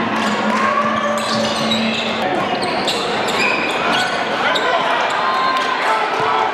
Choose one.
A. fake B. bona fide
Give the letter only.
B